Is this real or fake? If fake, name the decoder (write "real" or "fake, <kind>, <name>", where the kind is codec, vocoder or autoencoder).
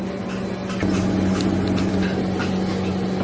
real